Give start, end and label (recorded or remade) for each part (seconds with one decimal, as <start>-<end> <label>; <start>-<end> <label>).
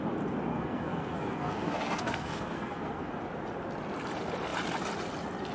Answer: 0.0-0.5 recorded; 0.5-3.1 remade; 3.1-5.5 recorded